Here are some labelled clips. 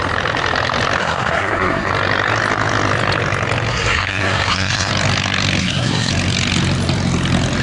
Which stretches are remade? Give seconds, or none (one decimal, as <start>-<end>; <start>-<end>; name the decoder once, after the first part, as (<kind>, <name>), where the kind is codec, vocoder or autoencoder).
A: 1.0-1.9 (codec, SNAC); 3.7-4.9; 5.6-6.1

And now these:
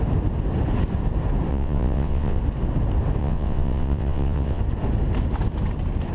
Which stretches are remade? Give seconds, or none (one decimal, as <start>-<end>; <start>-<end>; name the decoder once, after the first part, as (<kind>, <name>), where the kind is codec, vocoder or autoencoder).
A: 1.5-2.4 (vocoder, WaveNeXt); 3.2-4.6

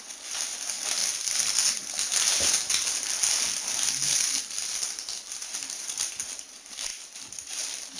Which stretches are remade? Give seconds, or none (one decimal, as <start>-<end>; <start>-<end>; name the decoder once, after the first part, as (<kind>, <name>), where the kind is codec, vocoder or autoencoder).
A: 5.6-6.2 (vocoder, BigVGAN v2); 6.9-7.5

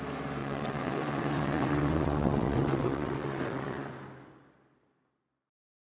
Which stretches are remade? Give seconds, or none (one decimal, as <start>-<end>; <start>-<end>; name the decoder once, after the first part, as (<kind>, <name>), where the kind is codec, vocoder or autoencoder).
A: 0.4-3.9 (vocoder, WaveNeXt)

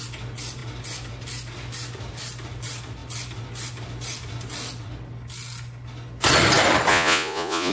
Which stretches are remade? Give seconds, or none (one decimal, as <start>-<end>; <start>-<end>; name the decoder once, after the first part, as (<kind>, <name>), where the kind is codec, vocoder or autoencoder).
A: 6.9-7.7 (vocoder, Vocos)